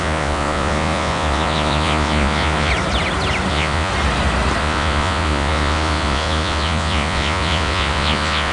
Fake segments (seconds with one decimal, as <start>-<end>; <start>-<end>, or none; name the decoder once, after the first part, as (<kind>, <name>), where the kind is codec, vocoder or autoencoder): 0.0-2.7 (vocoder, Vocos); 3.5-3.9; 4.6-8.5